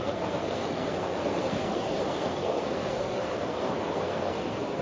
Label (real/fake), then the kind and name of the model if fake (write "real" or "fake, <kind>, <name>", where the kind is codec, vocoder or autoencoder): fake, codec, SNAC